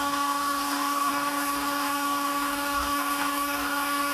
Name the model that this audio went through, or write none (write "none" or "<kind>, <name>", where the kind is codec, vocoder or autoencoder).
codec, DAC